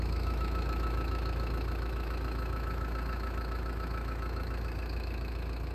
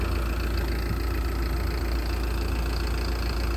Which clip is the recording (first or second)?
second